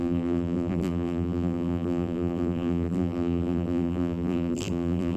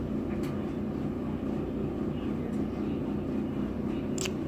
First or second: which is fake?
first